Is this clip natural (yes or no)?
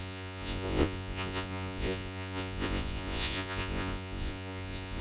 no